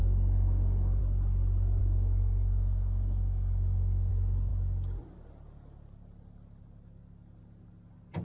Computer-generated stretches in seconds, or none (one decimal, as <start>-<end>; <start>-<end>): 0.0-1.0; 1.8-4.1